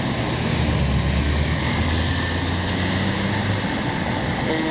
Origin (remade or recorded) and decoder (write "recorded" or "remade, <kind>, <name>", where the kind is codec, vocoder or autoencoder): recorded